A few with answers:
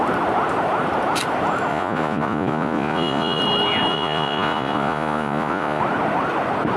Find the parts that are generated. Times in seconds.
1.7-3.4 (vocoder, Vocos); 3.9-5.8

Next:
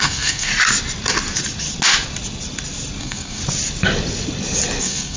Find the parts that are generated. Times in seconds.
0.0-0.5 (codec, SNAC); 3.0-3.4; 4.8-5.2

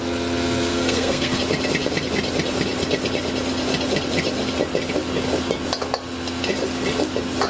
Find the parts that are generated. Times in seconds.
0.7-1.4 (codec, SNAC)

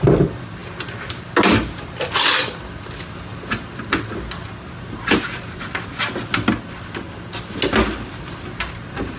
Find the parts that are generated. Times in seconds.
none

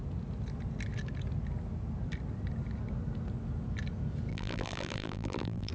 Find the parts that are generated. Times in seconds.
4.3-5.7 (vocoder, BigVGAN v2)

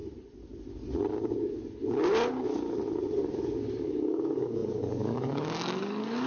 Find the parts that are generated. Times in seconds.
3.8-6.3 (codec, DAC)